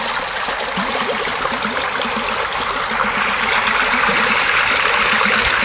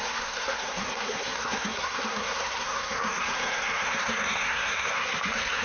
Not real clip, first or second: second